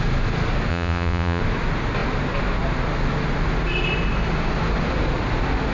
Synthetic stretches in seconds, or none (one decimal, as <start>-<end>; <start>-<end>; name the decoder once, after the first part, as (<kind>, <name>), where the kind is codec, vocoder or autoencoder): 0.7-1.4 (vocoder, Vocos)